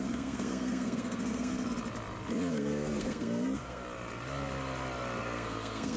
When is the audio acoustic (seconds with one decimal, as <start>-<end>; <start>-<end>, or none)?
1.5-2.5; 3.8-5.2